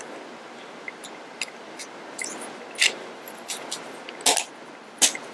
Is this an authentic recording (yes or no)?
yes